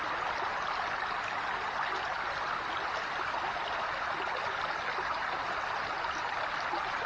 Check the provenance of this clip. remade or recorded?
recorded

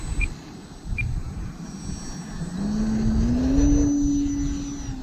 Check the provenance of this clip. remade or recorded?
recorded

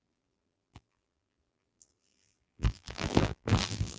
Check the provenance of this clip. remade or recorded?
remade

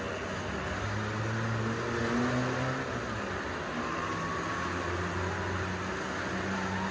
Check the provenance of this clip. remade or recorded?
recorded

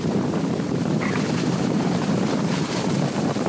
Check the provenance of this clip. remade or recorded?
remade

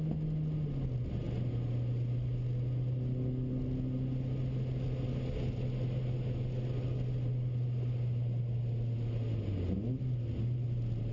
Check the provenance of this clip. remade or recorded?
recorded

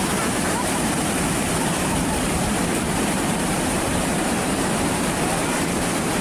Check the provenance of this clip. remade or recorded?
remade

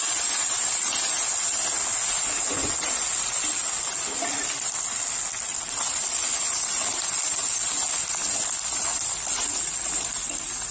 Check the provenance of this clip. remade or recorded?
recorded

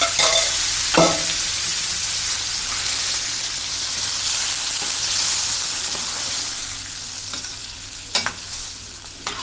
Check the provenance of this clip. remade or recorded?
remade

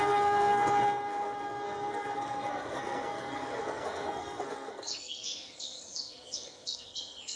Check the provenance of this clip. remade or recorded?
remade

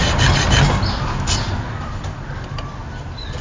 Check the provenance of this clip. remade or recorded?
recorded